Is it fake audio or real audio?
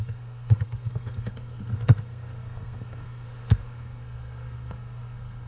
fake